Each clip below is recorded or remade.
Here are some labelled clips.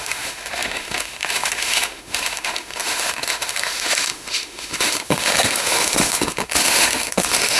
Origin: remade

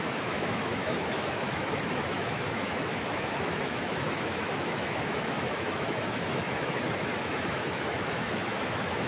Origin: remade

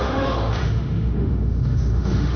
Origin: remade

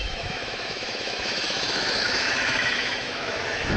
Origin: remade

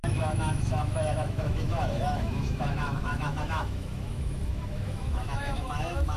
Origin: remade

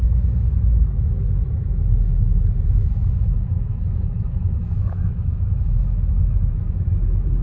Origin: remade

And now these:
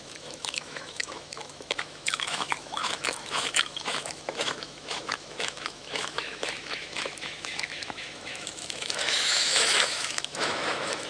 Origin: remade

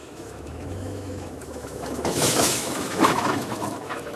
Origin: remade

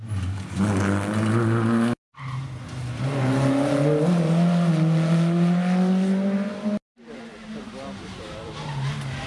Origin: recorded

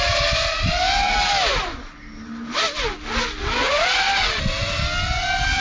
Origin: recorded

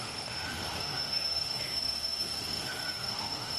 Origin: remade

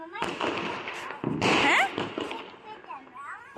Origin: recorded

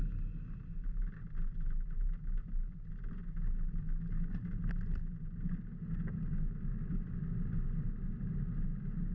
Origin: recorded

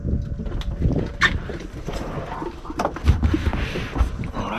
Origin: recorded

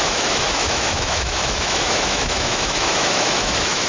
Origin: remade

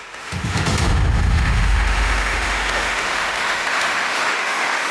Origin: remade